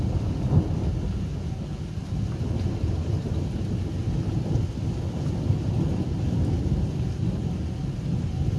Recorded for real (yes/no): yes